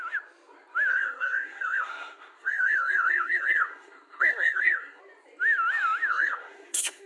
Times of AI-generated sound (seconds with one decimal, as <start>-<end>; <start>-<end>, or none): 0.9-5.0; 6.1-7.1